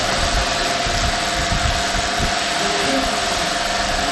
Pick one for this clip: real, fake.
real